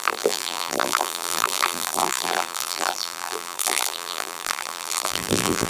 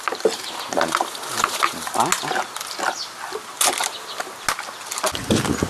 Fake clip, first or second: first